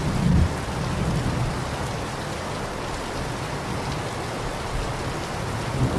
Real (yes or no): yes